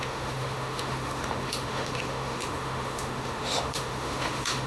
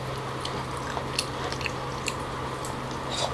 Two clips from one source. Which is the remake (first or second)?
first